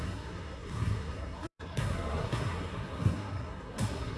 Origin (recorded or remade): remade